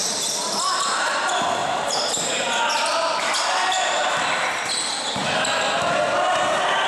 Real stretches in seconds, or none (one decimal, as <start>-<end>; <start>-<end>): 0.0-1.6; 2.3-6.9

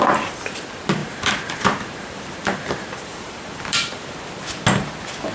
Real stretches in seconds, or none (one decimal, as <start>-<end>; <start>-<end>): 0.0-1.0; 4.2-5.3

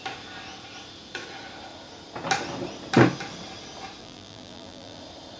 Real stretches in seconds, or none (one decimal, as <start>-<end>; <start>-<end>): 0.0-4.0; 5.0-5.4

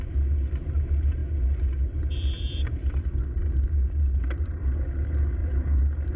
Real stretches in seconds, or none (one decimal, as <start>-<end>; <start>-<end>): 5.4-6.2

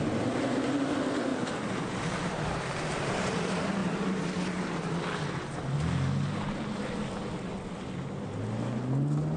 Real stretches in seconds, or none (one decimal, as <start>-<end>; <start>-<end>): 0.0-1.3; 2.3-9.4